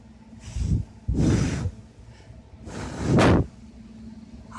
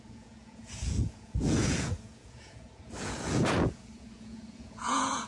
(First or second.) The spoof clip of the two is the second